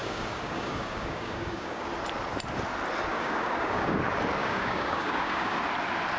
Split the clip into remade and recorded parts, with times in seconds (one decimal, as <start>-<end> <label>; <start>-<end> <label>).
0.0-1.9 remade; 1.9-3.1 recorded; 3.1-4.0 remade; 4.0-4.4 recorded; 4.4-5.6 remade; 5.6-6.2 recorded